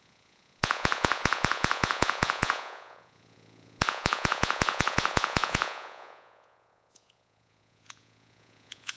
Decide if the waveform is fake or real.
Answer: fake